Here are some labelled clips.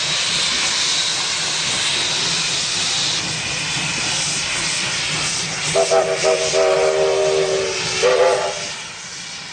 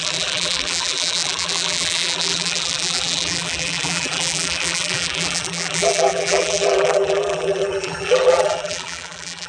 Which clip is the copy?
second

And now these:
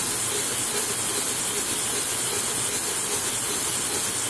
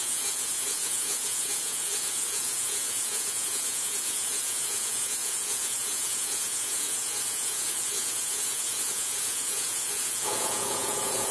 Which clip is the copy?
second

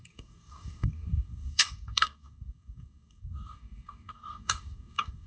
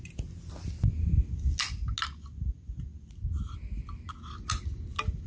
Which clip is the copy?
first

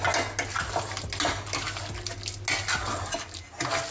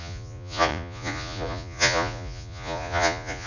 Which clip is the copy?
second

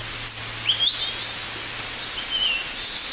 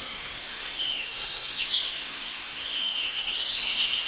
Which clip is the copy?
second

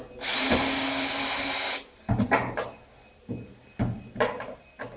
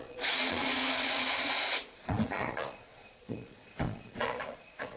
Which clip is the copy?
second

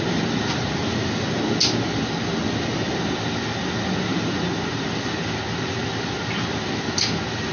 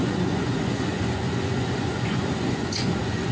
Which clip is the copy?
second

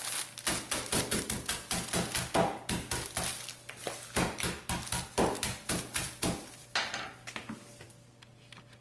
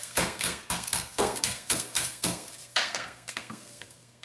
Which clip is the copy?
second